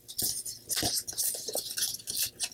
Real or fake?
real